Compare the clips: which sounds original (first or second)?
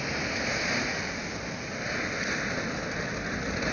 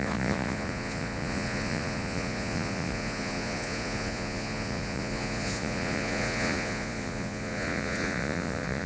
first